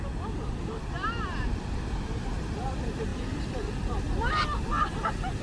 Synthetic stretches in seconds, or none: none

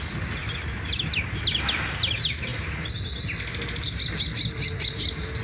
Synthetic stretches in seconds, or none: none

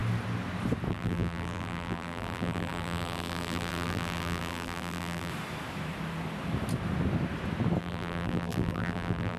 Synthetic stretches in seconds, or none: 0.9-5.3 (vocoder, BigVGAN v2); 7.8-9.4